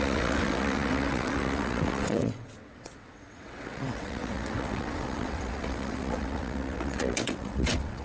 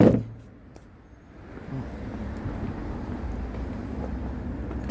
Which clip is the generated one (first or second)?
first